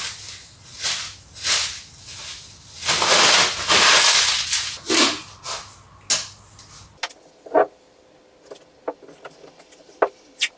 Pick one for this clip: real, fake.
real